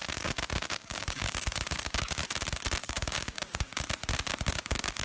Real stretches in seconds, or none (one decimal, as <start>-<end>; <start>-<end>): 2.2-2.8; 3.7-4.5